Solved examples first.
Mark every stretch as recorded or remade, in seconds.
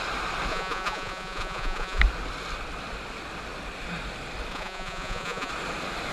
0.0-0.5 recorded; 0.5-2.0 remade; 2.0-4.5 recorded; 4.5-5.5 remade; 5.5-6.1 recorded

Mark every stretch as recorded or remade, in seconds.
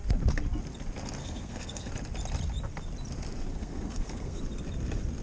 0.0-1.2 recorded; 1.2-1.9 remade; 1.9-3.5 recorded; 3.5-4.4 remade; 4.4-5.2 recorded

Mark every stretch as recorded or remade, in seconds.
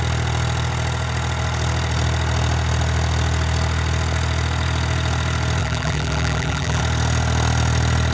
0.0-5.6 recorded; 5.6-6.8 remade; 6.8-8.1 recorded